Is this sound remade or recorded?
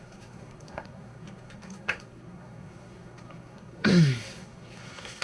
remade